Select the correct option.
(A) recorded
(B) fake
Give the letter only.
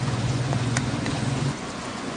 B